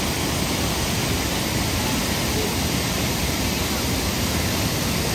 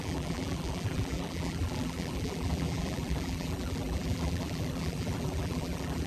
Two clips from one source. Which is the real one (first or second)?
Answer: first